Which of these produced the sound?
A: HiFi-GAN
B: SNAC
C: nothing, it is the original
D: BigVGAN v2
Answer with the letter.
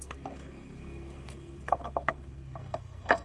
B